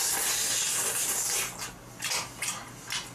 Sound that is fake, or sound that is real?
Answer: real